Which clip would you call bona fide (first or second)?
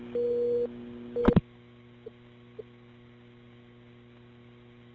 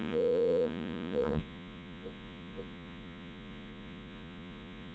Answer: first